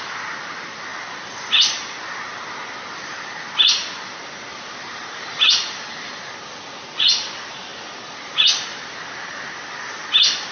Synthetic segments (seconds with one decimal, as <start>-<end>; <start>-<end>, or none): 4.5-6.2